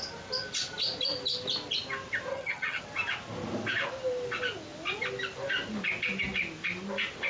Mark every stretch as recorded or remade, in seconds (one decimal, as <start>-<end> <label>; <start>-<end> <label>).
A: 0.0-2.3 recorded; 2.3-2.8 remade; 2.8-7.3 recorded